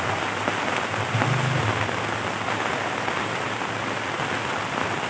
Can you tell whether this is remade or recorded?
recorded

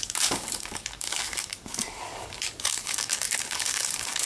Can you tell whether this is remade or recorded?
remade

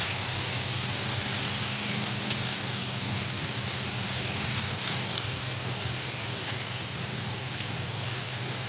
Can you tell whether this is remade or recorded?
remade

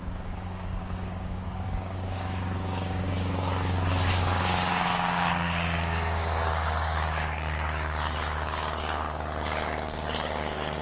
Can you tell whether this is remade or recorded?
remade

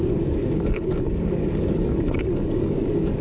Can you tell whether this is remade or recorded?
remade